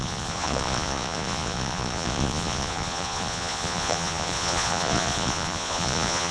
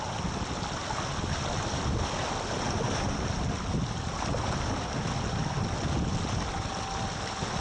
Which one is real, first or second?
second